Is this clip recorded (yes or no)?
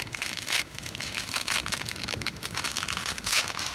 no